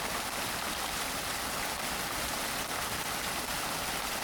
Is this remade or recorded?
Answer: recorded